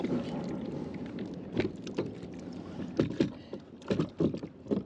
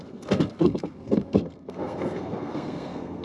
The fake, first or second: second